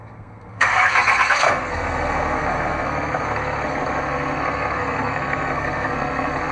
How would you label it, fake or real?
fake